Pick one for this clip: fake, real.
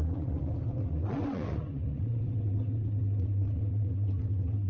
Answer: fake